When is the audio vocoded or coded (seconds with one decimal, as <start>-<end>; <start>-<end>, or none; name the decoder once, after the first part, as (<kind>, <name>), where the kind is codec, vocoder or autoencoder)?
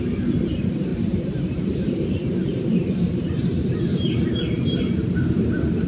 0.9-4.4 (vocoder, BigVGAN v2)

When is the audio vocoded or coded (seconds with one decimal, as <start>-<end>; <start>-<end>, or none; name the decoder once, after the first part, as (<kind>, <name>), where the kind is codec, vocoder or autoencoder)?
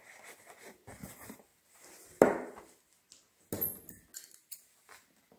none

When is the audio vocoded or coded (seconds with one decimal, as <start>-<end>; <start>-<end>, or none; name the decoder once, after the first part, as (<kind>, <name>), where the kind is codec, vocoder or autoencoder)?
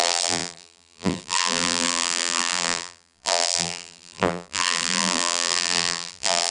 0.0-6.5 (vocoder, BigVGAN v2)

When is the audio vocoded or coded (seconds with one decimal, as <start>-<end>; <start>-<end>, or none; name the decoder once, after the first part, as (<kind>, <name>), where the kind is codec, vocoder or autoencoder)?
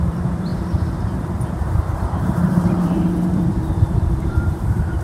0.0-5.0 (vocoder, BigVGAN v2)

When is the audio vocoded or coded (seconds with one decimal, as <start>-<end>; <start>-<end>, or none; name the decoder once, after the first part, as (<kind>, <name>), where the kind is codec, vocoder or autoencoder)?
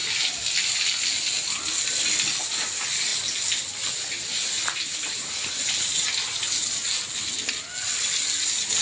none